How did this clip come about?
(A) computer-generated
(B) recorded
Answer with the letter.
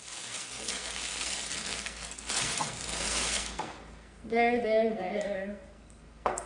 A